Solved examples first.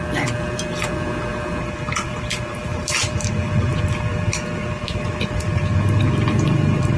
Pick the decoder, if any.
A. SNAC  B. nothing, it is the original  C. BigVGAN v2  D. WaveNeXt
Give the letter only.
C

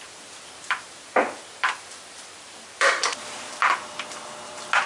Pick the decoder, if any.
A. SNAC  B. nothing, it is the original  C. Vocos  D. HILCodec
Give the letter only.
B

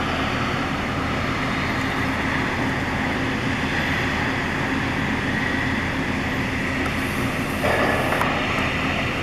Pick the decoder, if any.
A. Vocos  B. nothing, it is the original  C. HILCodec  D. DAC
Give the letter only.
B